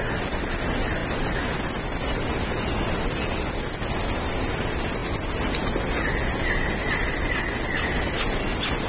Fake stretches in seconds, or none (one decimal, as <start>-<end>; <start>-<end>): none